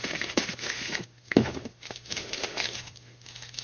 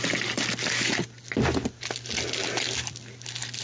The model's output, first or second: first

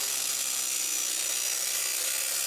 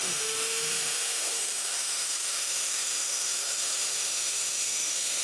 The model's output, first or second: second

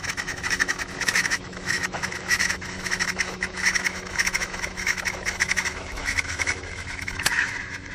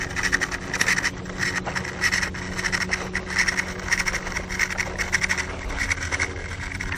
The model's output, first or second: first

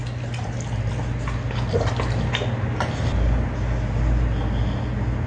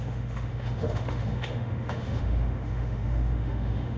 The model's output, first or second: second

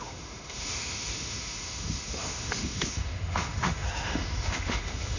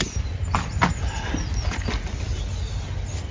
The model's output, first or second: first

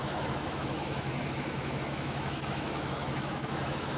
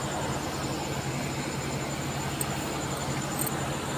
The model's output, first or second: first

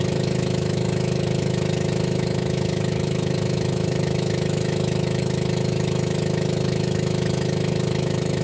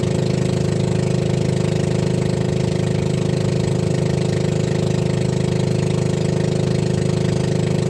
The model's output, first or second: first